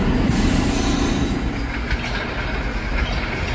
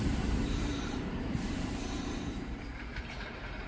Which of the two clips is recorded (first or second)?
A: first